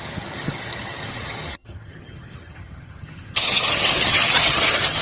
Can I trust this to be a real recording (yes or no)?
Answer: no